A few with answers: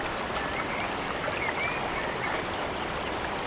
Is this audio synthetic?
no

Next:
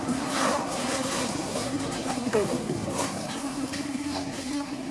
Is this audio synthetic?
yes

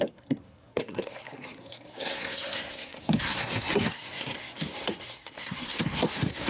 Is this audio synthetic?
yes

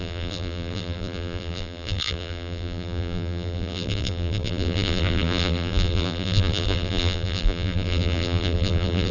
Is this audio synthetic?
yes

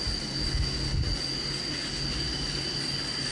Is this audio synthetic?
no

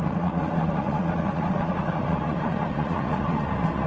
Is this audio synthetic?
yes